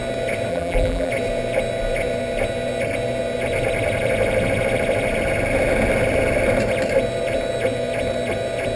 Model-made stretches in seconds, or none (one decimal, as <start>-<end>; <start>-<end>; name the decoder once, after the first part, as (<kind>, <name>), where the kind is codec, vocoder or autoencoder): 0.5-1.1 (vocoder, BigVGAN v2)